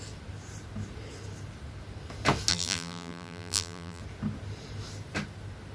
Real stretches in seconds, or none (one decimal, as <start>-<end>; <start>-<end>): 0.0-2.5; 4.0-5.7